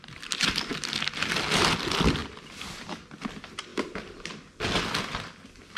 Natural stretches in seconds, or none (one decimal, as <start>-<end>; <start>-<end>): 0.7-1.4